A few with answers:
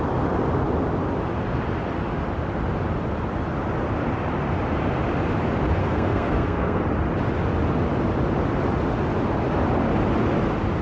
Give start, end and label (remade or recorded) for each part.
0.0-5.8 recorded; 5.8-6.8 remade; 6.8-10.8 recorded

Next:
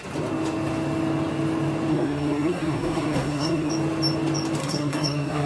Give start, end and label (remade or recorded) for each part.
0.0-1.9 recorded; 1.9-3.7 remade; 3.7-4.6 recorded; 4.6-5.5 remade

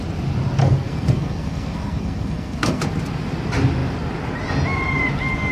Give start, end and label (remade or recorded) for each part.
0.0-0.6 recorded; 0.6-2.8 remade; 2.8-5.5 recorded

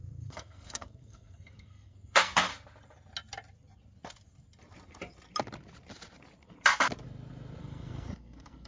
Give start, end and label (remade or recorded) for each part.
0.0-2.5 remade; 2.5-7.6 recorded; 7.6-8.7 remade

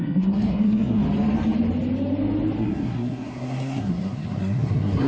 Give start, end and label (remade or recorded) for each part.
0.0-1.0 remade; 1.0-2.6 recorded; 2.6-5.1 remade

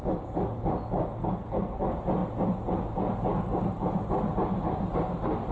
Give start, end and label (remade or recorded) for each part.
0.0-1.2 recorded; 1.2-1.8 remade; 1.8-5.5 recorded